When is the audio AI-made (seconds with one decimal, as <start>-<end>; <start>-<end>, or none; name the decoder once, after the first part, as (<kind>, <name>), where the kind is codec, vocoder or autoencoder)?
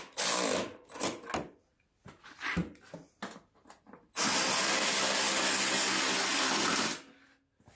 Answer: none